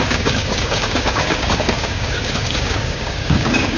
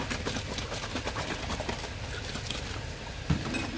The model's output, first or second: first